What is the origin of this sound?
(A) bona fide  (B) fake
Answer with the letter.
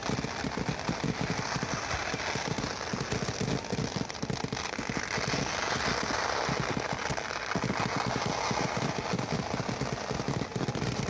A